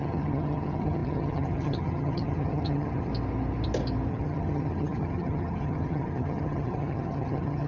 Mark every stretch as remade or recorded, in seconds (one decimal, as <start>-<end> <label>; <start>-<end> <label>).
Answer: 0.0-3.1 remade; 3.1-4.1 recorded; 4.1-7.7 remade